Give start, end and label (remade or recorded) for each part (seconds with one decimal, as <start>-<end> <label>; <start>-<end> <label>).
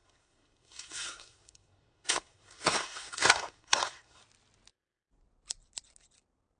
0.0-4.2 remade; 4.2-6.6 recorded